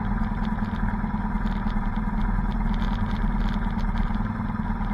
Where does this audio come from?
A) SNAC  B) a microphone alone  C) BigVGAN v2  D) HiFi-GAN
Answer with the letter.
B